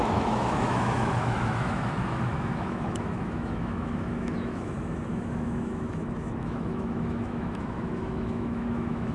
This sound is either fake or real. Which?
fake